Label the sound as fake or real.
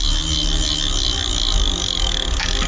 real